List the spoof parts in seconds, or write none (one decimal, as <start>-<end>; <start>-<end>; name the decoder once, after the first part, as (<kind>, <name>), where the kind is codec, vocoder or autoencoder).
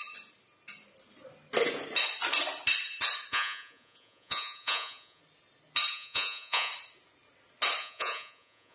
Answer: 3.3-5.2 (vocoder, Vocos); 5.9-6.7; 7.8-8.7